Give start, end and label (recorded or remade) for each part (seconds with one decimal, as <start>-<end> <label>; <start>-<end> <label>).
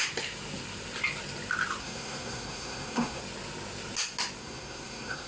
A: 0.0-1.8 recorded; 1.8-3.2 remade; 3.2-4.4 recorded; 4.4-5.3 remade